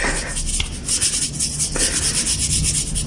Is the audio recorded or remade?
recorded